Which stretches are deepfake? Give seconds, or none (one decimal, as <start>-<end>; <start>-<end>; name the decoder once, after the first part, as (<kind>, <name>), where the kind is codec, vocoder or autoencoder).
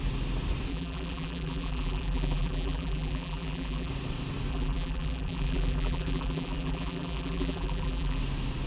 0.7-3.9 (vocoder, BigVGAN v2); 4.5-8.2